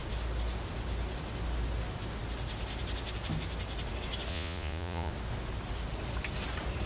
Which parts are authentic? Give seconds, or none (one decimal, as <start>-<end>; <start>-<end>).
0.0-4.3; 5.1-6.9